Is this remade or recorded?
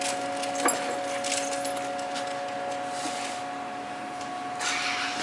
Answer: recorded